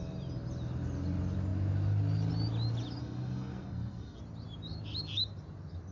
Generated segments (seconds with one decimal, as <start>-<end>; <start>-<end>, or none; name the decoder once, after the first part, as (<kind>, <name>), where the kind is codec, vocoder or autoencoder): 3.0-4.2 (codec, SNAC)